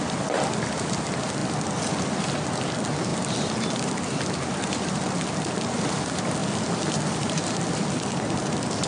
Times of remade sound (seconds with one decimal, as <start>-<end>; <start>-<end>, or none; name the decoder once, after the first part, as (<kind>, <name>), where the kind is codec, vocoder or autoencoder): 6.4-8.2 (vocoder, BigVGAN v2)